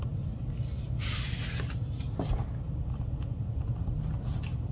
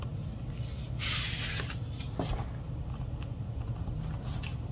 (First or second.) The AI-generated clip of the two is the first